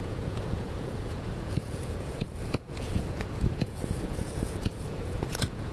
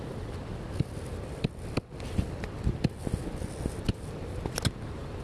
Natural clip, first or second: second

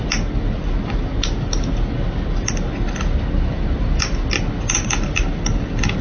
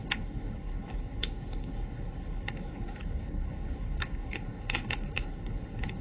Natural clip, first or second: first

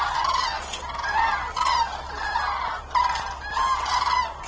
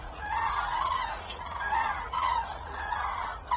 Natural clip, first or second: first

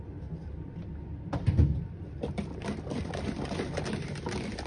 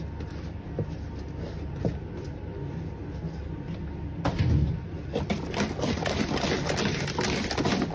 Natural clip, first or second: second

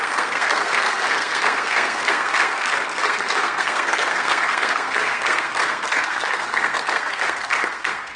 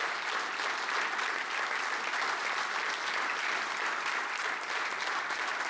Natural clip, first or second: second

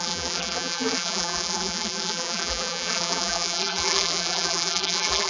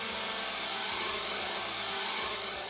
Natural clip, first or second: second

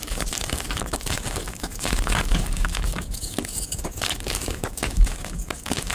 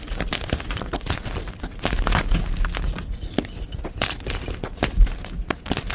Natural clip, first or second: second